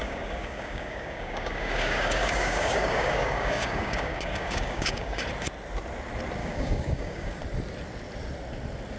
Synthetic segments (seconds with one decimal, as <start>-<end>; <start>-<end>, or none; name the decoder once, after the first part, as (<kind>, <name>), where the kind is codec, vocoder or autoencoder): 0.0-5.2 (codec, DAC); 6.4-7.4